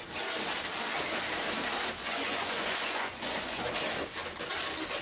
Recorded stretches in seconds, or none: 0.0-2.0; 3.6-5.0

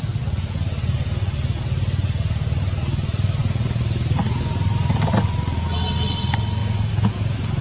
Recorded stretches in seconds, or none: 0.0-6.6